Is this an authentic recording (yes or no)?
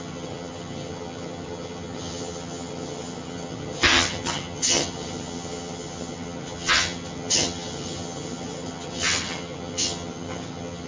no